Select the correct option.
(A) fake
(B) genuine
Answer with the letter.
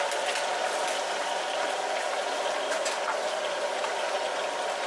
B